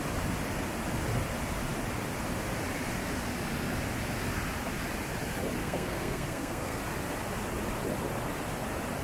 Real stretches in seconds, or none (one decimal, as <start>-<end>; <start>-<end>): 0.0-5.6; 6.8-9.0